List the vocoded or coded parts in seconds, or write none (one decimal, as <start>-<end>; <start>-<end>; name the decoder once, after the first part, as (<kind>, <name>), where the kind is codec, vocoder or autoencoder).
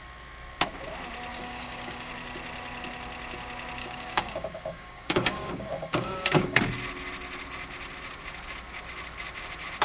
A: 1.3-2.1 (codec, DAC); 3.8-6.6